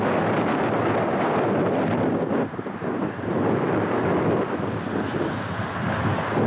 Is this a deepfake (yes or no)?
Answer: no